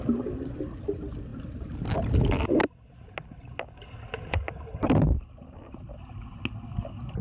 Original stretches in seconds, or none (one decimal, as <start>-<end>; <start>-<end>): 0.0-7.2